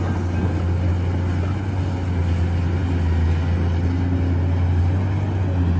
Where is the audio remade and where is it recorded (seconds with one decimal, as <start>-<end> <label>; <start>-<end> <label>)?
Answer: 0.0-5.8 recorded